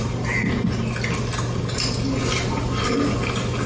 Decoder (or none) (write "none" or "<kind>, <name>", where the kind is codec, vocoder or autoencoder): none